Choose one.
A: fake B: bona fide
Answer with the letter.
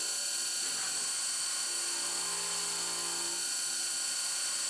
B